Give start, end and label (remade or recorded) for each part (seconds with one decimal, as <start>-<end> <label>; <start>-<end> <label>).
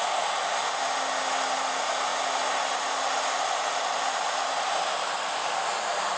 0.0-6.2 recorded